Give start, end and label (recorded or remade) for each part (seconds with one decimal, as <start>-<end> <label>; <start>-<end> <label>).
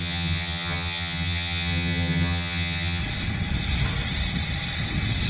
0.0-3.0 remade; 3.0-5.3 recorded